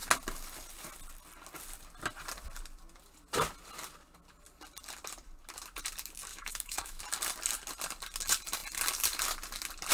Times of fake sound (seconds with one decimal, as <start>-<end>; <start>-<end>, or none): 6.3-7.0